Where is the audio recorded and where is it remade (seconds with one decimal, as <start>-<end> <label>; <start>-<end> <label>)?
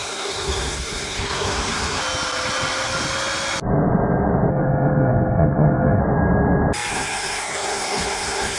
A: 0.0-2.0 remade; 2.0-4.5 recorded; 4.5-6.0 remade; 6.0-6.9 recorded; 6.9-8.6 remade